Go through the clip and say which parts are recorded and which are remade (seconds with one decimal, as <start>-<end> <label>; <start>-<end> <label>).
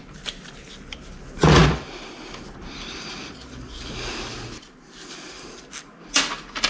0.0-6.7 recorded